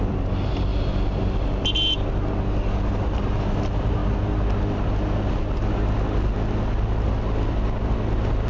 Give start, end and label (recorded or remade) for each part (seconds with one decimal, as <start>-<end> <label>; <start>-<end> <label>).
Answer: 0.0-8.5 recorded